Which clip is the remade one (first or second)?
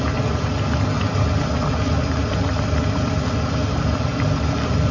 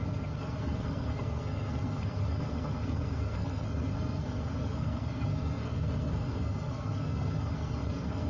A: second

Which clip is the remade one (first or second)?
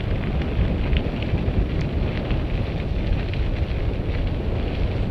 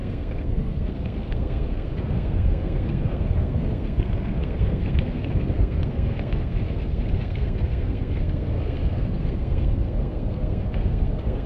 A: second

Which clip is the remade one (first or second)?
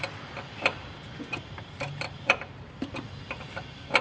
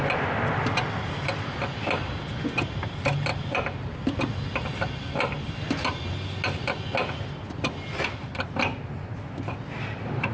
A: first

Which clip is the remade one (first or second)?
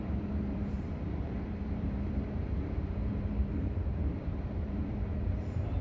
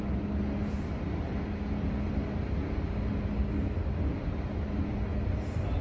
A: first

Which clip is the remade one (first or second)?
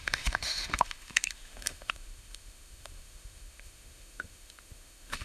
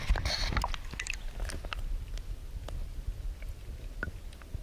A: first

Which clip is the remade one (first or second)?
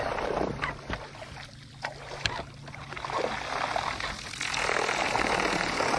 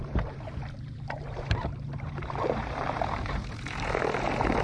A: second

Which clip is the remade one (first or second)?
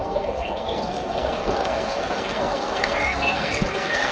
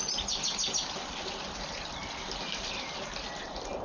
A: first